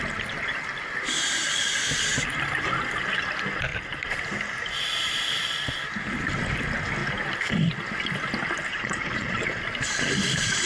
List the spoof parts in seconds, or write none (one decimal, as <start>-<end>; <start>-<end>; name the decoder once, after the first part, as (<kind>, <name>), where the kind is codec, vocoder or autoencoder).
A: 8.7-9.6 (vocoder, Vocos)

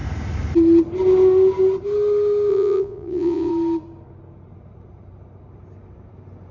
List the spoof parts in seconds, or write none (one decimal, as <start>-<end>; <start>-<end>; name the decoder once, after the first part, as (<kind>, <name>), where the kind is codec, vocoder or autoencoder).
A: 2.5-3.5 (vocoder, Vocos)